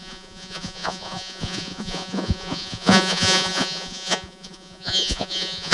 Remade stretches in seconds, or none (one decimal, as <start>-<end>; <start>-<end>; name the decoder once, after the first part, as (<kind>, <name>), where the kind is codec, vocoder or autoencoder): 0.0-5.7 (vocoder, Vocos)